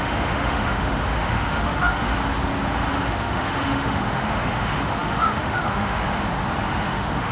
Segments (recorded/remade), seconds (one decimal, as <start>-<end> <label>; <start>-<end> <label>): 0.0-2.1 remade; 2.1-3.1 recorded; 3.1-6.0 remade; 6.0-6.8 recorded; 6.8-7.3 remade